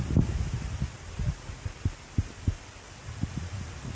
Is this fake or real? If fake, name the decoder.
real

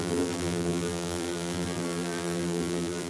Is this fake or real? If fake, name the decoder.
fake, vocoder, BigVGAN v2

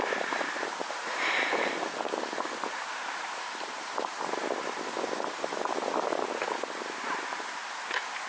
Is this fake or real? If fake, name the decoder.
real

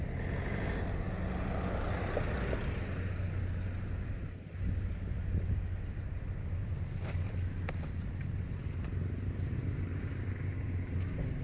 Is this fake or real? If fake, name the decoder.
real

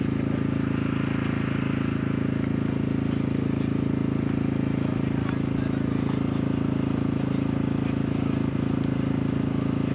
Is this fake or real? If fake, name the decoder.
real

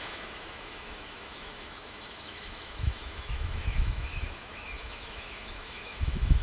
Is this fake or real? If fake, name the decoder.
fake, autoencoder, DAC-VAE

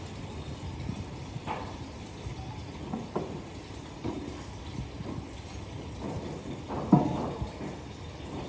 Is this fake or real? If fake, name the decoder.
fake, vocoder, BigVGAN v2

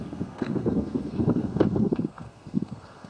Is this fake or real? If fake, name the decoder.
fake, codec, SNAC